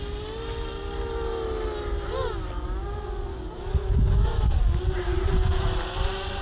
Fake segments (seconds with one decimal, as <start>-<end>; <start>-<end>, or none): 3.3-4.6